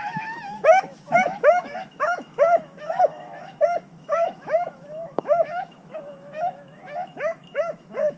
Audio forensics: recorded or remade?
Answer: remade